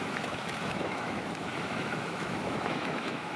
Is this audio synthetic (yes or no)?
yes